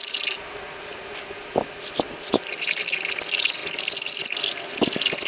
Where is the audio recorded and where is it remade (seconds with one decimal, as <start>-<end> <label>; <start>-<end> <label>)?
0.0-5.3 recorded